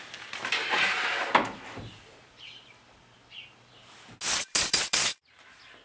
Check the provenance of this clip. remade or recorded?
recorded